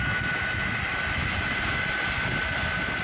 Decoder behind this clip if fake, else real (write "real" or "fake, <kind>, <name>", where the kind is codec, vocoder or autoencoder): real